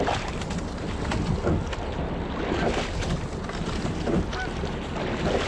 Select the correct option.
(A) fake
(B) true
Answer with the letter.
B